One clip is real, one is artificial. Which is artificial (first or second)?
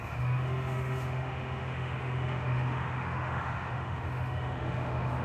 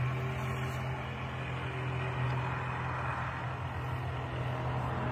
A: first